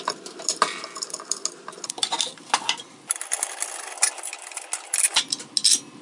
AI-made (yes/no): no